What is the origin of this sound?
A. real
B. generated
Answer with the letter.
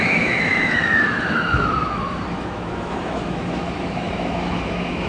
B